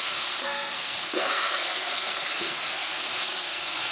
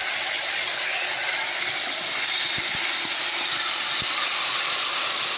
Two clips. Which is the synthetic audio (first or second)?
first